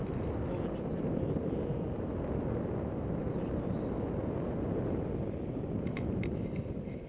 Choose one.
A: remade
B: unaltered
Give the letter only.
B